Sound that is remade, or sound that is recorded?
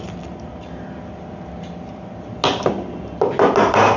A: recorded